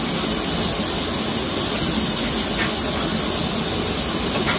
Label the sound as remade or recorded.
recorded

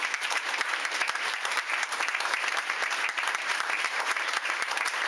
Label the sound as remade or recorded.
remade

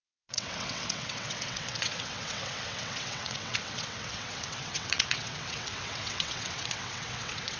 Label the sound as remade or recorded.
remade